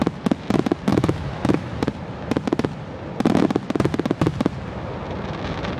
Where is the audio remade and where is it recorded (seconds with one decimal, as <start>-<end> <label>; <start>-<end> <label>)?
0.0-0.9 recorded; 0.9-1.7 remade; 1.7-5.8 recorded